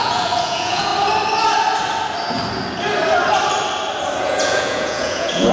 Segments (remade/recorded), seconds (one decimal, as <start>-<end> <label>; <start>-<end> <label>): 0.0-0.9 remade; 0.9-4.2 recorded; 4.2-5.5 remade